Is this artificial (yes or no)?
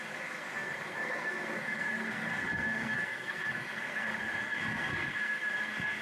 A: yes